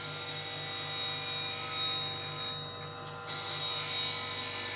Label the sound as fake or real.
real